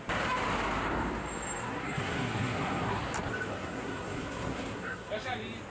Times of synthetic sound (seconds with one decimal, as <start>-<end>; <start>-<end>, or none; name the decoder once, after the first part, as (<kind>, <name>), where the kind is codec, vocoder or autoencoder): 1.6-3.0 (codec, SNAC); 3.5-5.1